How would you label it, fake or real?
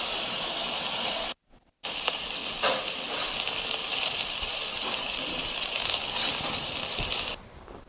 fake